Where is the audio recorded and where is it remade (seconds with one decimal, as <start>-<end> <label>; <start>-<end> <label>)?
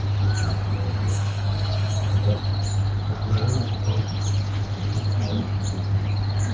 0.0-1.1 recorded; 1.1-1.9 remade; 1.9-6.5 recorded